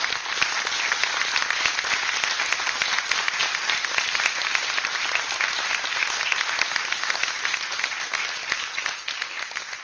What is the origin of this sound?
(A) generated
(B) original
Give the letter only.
B